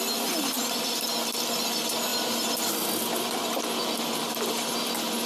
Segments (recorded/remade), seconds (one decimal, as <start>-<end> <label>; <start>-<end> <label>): 0.0-5.3 recorded